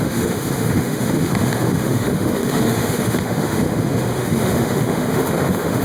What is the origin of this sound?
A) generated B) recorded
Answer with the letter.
A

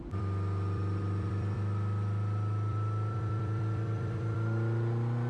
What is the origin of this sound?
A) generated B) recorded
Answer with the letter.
A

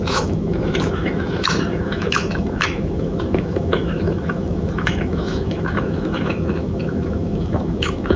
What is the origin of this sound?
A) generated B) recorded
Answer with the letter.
A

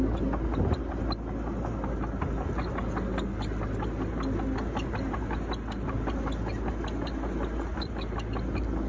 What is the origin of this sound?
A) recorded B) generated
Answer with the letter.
A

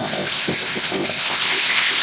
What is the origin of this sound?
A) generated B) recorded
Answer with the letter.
A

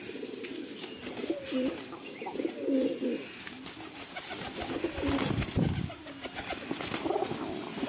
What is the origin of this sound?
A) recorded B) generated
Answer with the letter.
A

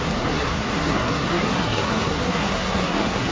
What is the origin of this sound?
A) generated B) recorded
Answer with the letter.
A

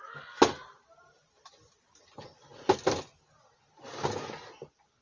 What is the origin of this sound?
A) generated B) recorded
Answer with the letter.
B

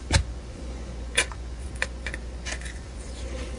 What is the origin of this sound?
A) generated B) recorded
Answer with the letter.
A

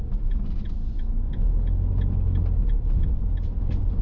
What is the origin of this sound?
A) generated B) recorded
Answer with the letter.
B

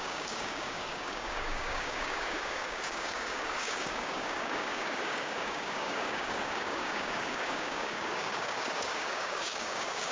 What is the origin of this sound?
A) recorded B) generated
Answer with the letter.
B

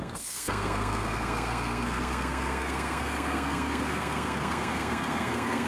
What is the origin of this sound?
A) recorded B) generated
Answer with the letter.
B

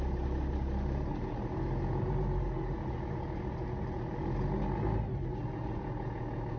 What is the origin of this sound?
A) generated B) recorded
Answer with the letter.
B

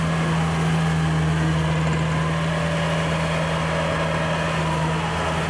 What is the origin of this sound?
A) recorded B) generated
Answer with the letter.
A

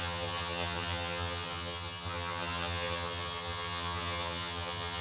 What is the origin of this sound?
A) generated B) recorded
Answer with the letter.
A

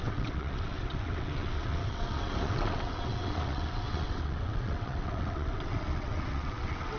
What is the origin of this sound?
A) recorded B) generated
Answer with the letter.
B